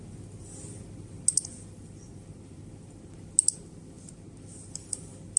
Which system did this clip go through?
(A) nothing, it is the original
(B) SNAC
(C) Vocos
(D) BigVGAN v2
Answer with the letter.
A